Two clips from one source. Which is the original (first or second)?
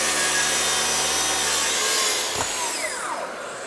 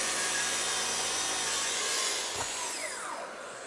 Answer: first